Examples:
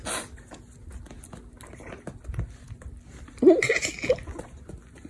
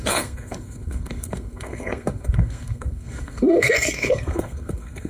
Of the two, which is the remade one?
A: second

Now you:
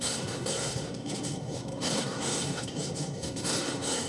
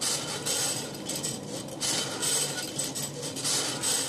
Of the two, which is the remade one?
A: first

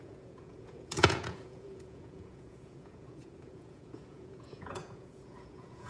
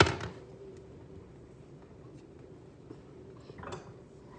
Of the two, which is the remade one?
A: first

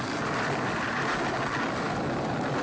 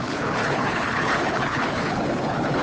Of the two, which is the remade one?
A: second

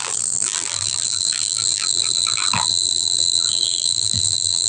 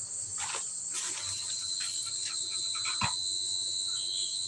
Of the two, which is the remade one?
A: first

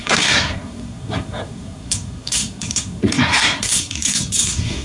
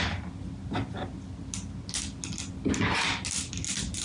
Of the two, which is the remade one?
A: first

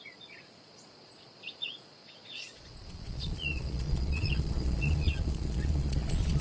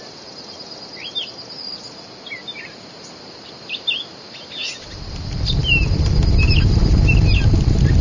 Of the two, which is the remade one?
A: first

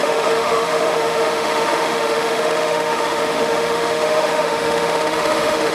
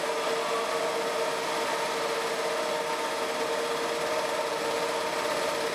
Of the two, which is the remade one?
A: first